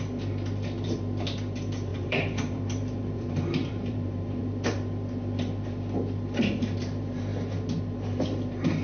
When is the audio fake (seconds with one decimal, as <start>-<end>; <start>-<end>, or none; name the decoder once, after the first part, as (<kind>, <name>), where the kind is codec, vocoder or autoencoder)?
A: 1.9-4.4 (vocoder, BigVGAN v2)